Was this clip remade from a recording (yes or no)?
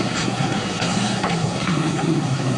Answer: yes